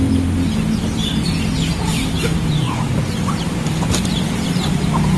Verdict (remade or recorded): recorded